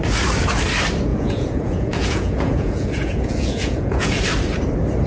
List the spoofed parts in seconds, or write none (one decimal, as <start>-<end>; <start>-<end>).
1.1-4.2